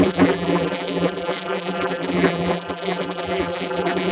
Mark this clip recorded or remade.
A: remade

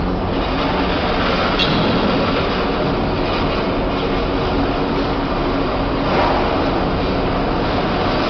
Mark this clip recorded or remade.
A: recorded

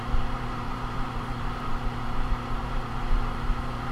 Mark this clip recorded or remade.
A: remade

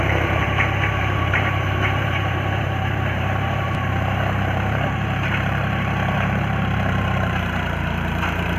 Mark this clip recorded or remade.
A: remade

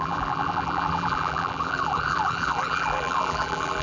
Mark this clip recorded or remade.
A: remade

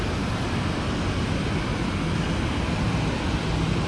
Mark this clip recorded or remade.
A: recorded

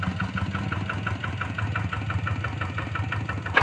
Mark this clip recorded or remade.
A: recorded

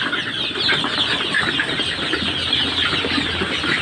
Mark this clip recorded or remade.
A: recorded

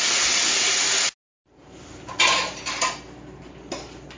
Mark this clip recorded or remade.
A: recorded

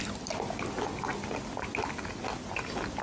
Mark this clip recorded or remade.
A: recorded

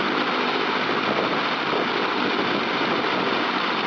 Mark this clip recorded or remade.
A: recorded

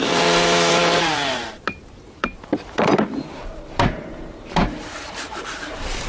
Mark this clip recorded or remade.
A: remade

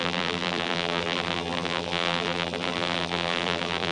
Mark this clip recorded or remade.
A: remade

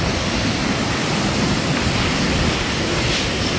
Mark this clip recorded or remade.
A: recorded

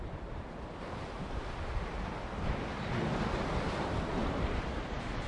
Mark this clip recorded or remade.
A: remade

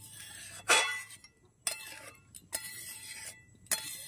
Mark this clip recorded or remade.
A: recorded